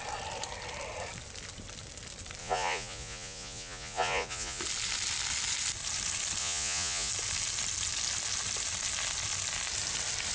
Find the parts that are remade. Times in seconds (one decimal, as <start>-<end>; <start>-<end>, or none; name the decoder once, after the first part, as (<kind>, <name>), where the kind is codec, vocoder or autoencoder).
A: 2.4-4.6 (vocoder, Vocos); 6.4-7.1

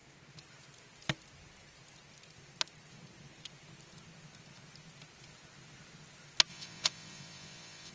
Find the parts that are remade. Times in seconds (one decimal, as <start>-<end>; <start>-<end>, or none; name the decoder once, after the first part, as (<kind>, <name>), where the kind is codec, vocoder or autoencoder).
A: 6.5-7.9 (vocoder, Vocos)

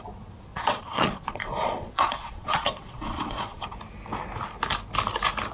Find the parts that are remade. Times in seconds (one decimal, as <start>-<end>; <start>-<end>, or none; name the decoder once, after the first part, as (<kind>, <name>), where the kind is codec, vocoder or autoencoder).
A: 0.5-3.8 (vocoder, Vocos)